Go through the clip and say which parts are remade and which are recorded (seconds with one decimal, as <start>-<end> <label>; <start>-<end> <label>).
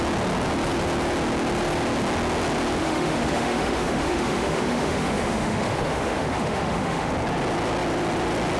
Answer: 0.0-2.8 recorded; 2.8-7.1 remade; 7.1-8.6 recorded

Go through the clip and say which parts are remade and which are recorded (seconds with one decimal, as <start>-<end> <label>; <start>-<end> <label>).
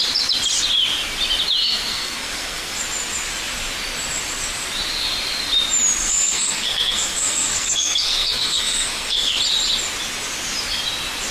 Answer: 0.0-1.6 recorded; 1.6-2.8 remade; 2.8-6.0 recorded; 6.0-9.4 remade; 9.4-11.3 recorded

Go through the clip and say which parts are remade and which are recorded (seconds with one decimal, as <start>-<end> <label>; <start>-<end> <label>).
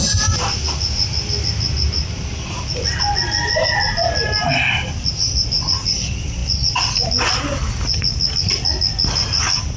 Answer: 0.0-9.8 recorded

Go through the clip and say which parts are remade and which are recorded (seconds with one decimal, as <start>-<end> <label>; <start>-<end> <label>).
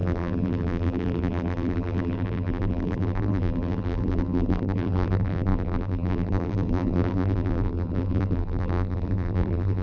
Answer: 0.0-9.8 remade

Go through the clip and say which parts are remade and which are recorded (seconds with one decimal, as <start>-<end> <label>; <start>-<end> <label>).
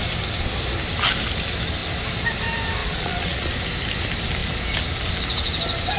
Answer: 0.0-2.8 recorded; 2.8-3.5 remade; 3.5-6.0 recorded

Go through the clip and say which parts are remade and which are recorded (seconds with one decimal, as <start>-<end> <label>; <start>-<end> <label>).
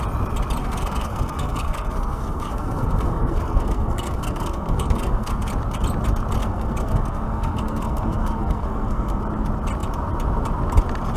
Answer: 0.0-0.6 recorded; 0.6-5.5 remade; 5.5-6.4 recorded; 6.4-9.2 remade; 9.2-11.2 recorded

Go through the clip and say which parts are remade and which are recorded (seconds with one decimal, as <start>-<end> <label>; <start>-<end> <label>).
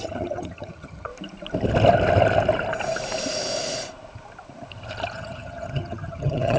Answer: 0.0-1.1 remade; 1.1-5.1 recorded; 5.1-6.6 remade